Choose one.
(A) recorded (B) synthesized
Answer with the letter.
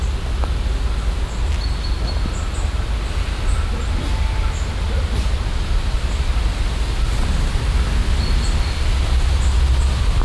A